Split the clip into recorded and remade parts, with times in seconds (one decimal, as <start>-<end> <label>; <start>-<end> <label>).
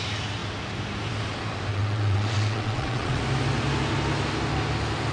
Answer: 0.0-1.7 recorded; 1.7-3.2 remade; 3.2-5.1 recorded